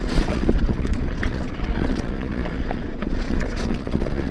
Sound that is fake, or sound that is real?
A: fake